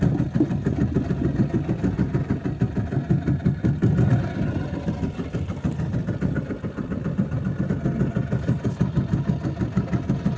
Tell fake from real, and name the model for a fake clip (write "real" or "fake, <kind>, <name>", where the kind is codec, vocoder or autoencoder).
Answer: real